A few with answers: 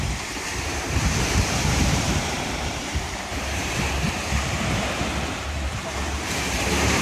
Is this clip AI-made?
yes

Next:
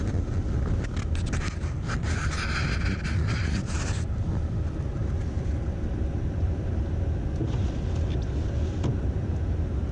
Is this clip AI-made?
no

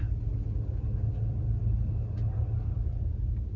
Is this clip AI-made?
no